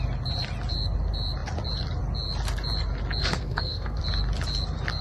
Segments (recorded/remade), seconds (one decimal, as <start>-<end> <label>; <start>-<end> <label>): 0.0-3.2 recorded; 3.2-4.0 remade; 4.0-5.0 recorded